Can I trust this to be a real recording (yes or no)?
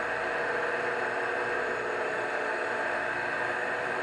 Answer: yes